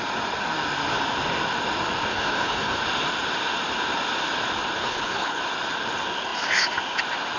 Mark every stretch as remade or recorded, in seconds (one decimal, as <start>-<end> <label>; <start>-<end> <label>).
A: 0.0-2.1 recorded; 2.1-2.8 remade; 2.8-4.8 recorded; 4.8-5.4 remade; 5.4-7.4 recorded